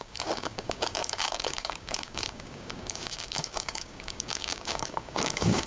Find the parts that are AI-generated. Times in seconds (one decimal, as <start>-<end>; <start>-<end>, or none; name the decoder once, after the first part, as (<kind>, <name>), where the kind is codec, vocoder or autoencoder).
0.0-5.7 (codec, DAC)